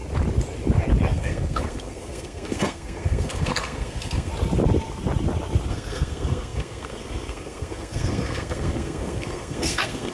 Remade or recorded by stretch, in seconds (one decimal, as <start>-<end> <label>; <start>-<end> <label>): 0.0-1.1 recorded; 1.1-4.3 remade; 4.3-5.7 recorded; 5.7-10.1 remade